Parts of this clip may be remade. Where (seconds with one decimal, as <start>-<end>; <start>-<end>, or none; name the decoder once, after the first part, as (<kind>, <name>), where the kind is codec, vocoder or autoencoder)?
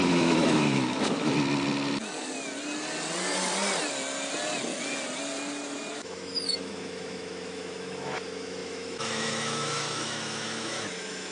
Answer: 0.0-1.3 (autoencoder, DAC-VAE); 5.9-11.3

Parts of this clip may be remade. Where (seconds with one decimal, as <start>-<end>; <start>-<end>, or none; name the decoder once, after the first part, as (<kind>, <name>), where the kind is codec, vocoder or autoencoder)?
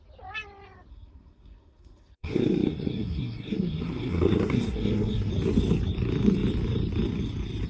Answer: 0.9-5.3 (codec, SNAC)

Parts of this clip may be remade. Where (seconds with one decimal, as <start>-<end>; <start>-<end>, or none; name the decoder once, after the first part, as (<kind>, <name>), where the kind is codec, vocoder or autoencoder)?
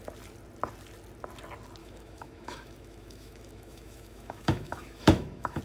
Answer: 1.8-5.6 (autoencoder, DAC-VAE)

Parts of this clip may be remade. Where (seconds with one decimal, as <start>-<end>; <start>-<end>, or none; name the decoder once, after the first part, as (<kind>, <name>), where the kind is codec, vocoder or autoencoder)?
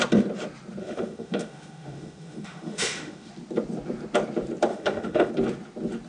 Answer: 0.8-3.3 (autoencoder, DAC-VAE); 4.7-5.3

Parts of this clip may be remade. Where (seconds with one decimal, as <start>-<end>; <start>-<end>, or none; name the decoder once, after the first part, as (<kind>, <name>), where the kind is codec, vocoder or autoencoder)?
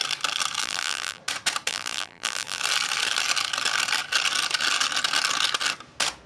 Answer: 0.6-1.2 (vocoder, BigVGAN v2); 1.7-2.6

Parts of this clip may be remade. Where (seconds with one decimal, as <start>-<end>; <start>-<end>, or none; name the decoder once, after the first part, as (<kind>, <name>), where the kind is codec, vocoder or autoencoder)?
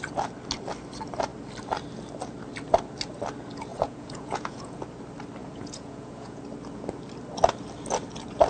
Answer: 3.7-4.8 (vocoder, Vocos); 5.4-6.4